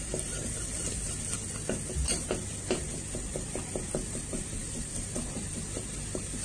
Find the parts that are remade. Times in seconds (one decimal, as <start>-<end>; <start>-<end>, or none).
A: none